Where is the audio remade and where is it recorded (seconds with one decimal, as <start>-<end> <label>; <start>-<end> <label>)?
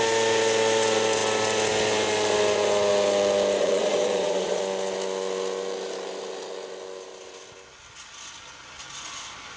0.0-3.6 recorded; 3.6-4.6 remade; 4.6-9.6 recorded